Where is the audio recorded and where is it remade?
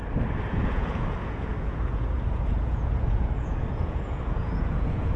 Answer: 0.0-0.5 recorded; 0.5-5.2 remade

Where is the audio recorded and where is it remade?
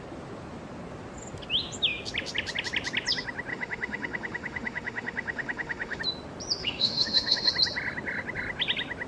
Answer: 0.0-3.5 recorded; 3.5-6.0 remade; 6.0-6.6 recorded; 6.6-7.5 remade; 7.5-9.1 recorded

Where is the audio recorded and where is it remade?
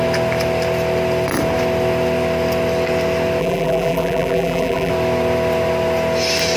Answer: 0.0-3.4 recorded; 3.4-4.9 remade; 4.9-6.6 recorded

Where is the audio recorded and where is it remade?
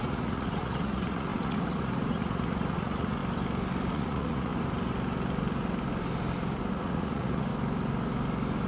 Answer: 0.0-3.2 remade; 3.2-3.9 recorded; 3.9-4.5 remade; 4.5-6.7 recorded; 6.7-7.5 remade; 7.5-8.7 recorded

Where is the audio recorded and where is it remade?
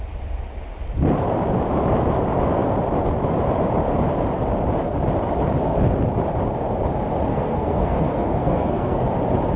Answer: 0.0-7.3 recorded; 7.3-9.0 remade; 9.0-9.6 recorded